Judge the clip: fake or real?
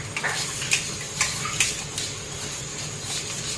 real